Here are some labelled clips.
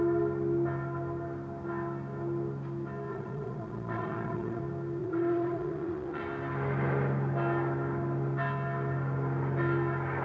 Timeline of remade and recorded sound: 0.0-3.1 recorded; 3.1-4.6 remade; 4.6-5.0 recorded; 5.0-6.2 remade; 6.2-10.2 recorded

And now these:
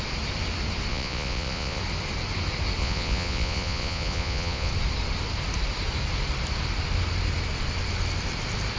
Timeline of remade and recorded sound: 0.0-0.9 recorded; 0.9-1.8 remade; 1.8-2.8 recorded; 2.8-4.7 remade; 4.7-8.8 recorded

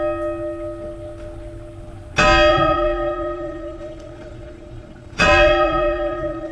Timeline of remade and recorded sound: 0.0-2.5 recorded; 2.5-6.5 remade